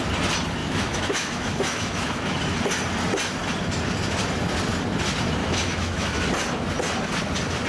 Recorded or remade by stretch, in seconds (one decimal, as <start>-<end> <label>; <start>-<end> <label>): 0.0-0.6 recorded; 0.6-2.4 remade; 2.4-5.4 recorded; 5.4-6.2 remade; 6.2-7.7 recorded